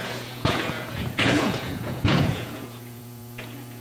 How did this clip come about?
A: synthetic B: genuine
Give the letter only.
A